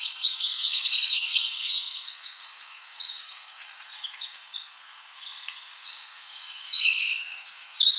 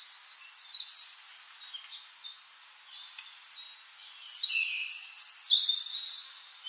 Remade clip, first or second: first